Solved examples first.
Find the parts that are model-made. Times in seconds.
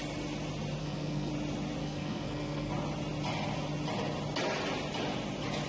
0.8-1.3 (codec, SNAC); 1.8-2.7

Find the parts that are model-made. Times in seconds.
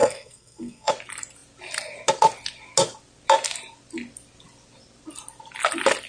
0.0-0.9 (codec, SNAC)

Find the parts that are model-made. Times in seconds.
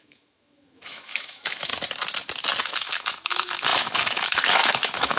0.0-1.7 (autoencoder, DAC-VAE); 2.6-5.2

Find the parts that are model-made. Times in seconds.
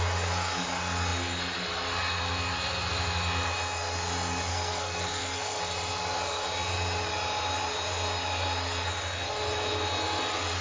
4.5-5.6 (codec, SNAC)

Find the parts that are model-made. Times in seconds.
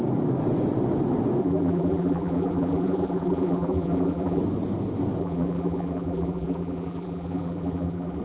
1.4-4.4 (vocoder, BigVGAN v2); 5.2-8.2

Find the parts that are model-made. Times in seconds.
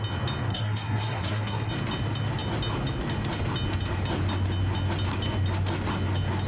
0.5-1.7 (codec, SNAC)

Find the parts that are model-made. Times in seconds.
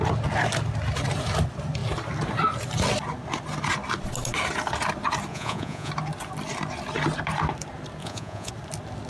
5.3-5.9 (vocoder, Vocos); 8.0-8.5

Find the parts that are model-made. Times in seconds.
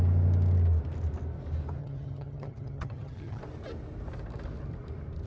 1.8-3.4 (vocoder, HiFi-GAN)